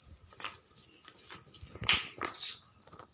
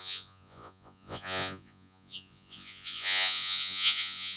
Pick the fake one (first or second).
second